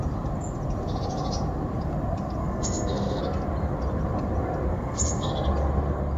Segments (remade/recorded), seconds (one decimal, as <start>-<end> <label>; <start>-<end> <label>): 0.0-2.4 recorded; 2.4-3.2 remade; 3.2-4.7 recorded; 4.7-5.3 remade; 5.3-6.2 recorded